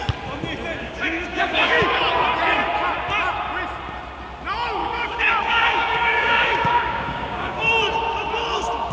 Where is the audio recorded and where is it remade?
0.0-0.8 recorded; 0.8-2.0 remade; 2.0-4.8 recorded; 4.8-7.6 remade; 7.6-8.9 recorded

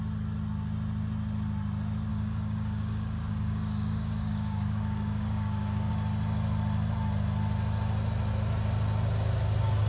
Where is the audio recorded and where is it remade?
0.0-2.1 recorded; 2.1-5.9 remade; 5.9-9.9 recorded

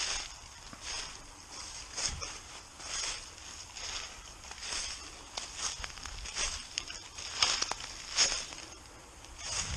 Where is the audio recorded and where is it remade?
0.0-9.8 recorded

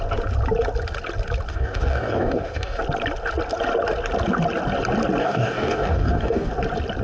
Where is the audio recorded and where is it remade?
0.0-1.5 recorded; 1.5-2.8 remade; 2.8-5.2 recorded; 5.2-6.5 remade; 6.5-7.0 recorded